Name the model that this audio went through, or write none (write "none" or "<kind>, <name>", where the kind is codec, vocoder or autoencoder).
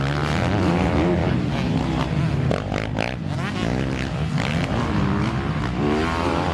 none